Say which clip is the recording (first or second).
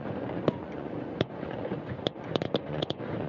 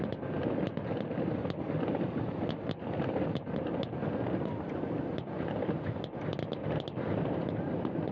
second